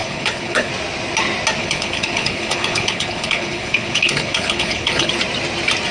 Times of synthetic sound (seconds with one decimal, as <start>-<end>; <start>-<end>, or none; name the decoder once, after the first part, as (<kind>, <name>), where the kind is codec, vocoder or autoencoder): 0.0-0.7 (codec, HILCodec); 1.6-5.1